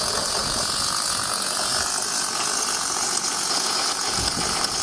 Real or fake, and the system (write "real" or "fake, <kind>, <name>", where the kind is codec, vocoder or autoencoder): fake, vocoder, Vocos